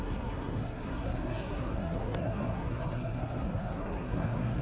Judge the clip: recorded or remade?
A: remade